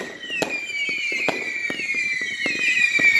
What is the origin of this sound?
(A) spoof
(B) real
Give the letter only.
A